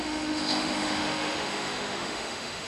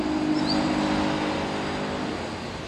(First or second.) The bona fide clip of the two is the second